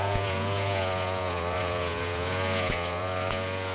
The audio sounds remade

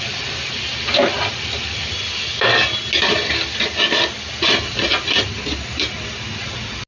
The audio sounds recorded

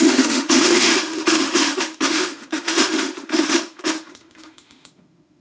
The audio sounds remade